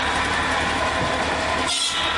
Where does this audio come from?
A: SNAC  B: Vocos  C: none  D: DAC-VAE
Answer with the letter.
C